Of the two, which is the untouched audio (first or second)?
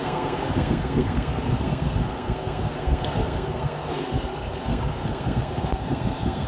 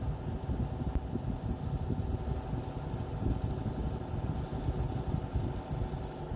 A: second